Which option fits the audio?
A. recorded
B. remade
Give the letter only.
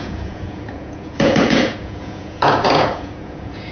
B